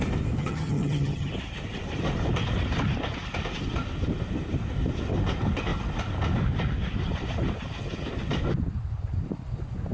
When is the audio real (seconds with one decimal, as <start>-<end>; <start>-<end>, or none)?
0.0-0.4; 1.3-9.9